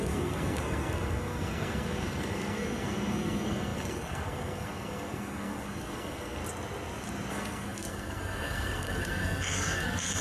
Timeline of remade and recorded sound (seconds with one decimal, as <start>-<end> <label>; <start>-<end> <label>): 0.0-6.4 remade; 6.4-7.3 recorded; 7.3-10.2 remade